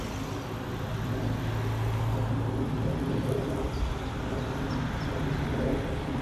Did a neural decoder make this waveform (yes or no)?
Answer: no